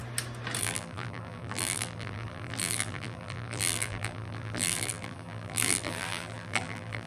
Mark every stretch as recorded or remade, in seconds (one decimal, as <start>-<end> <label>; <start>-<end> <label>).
0.0-0.6 recorded; 0.6-7.1 remade